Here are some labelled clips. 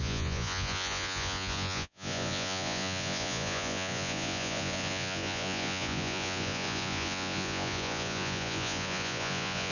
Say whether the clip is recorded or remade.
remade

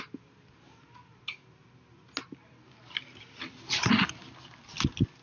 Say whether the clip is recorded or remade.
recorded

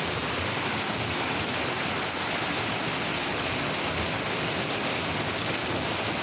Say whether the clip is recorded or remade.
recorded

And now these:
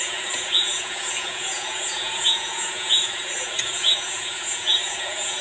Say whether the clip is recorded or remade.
remade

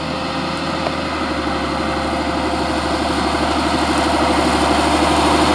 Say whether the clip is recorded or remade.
recorded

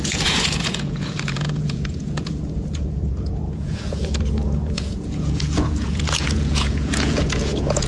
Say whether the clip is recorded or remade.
remade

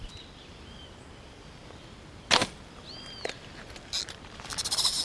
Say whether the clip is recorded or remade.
recorded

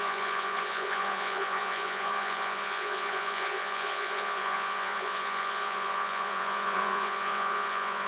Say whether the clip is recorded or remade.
remade